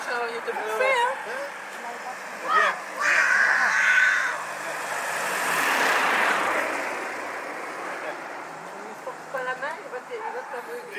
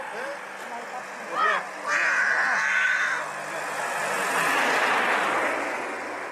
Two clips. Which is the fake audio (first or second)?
first